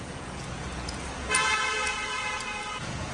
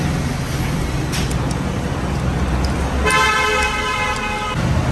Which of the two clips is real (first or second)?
second